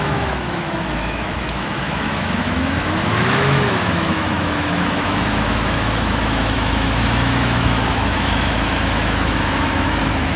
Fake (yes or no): yes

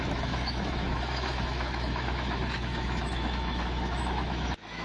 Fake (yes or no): yes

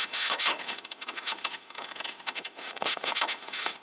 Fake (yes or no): yes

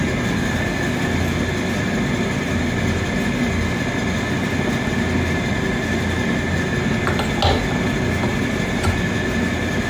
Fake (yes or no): no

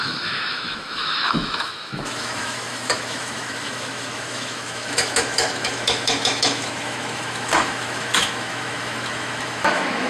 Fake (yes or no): yes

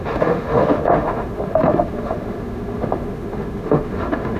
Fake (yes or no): yes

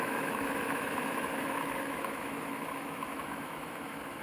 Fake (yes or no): yes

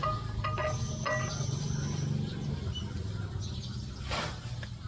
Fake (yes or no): no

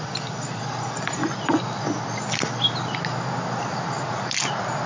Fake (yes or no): no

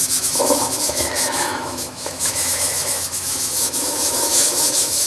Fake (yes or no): yes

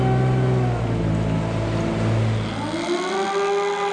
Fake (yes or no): no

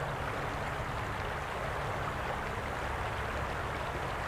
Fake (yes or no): no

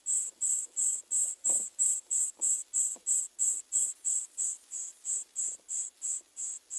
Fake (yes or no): no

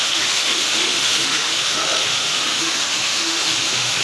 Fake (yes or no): yes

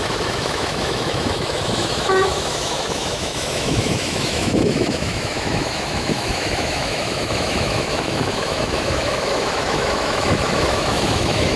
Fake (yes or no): yes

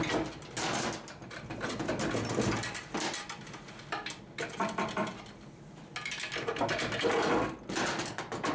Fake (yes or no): no